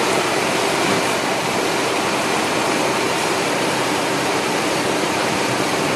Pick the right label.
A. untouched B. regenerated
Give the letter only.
B